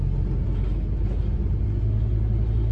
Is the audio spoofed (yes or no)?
no